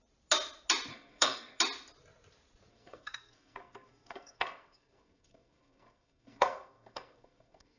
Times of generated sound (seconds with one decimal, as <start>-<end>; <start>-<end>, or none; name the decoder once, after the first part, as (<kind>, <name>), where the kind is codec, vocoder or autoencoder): 0.9-1.6 (codec, SNAC); 2.7-7.8